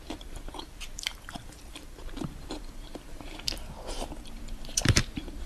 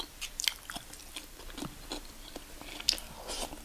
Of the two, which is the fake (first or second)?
first